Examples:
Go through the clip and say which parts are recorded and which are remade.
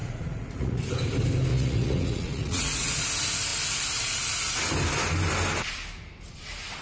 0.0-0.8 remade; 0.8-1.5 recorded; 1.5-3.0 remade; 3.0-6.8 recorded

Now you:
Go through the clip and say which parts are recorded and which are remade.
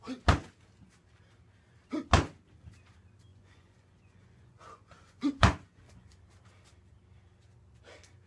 0.0-3.3 recorded; 3.3-6.2 remade; 6.2-8.3 recorded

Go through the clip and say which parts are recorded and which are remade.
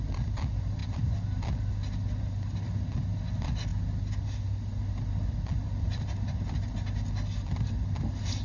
0.0-8.4 recorded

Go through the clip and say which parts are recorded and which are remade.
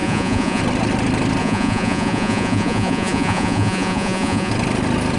0.0-0.6 remade; 0.6-1.4 recorded; 1.4-4.5 remade; 4.5-5.2 recorded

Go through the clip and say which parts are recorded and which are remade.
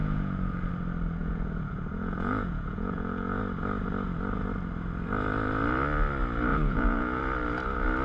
0.0-0.7 remade; 0.7-1.2 recorded; 1.2-3.4 remade; 3.4-6.5 recorded; 6.5-7.2 remade; 7.2-8.0 recorded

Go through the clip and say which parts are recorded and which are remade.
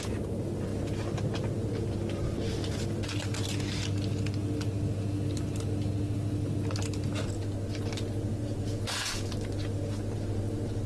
0.0-8.4 recorded; 8.4-9.3 remade; 9.3-10.9 recorded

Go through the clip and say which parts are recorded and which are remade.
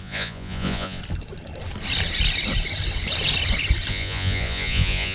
0.0-1.0 remade; 1.0-3.9 recorded; 3.9-5.1 remade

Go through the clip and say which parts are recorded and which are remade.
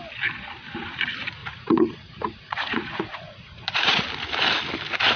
0.0-1.4 recorded; 1.4-4.0 remade; 4.0-5.2 recorded